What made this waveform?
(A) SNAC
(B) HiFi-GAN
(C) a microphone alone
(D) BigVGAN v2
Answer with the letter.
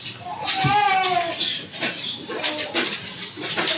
D